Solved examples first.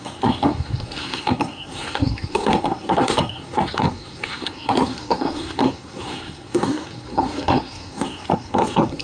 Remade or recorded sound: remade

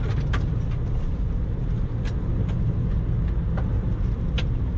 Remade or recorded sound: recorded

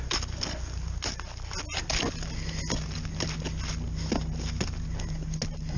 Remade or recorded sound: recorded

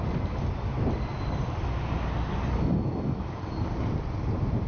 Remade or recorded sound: recorded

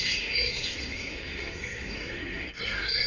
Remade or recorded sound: remade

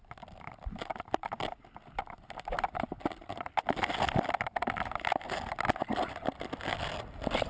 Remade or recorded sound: recorded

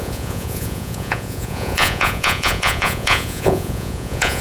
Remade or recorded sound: remade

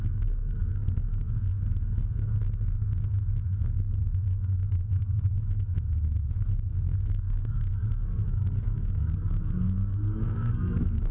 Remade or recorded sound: remade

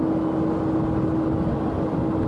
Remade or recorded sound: recorded